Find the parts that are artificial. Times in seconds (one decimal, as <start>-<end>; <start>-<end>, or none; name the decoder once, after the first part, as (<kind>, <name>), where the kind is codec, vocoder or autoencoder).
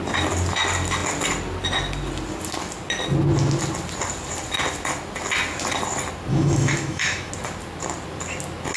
6.3-7.3 (autoencoder, DAC-VAE)